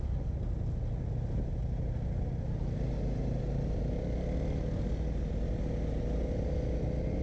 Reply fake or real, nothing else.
real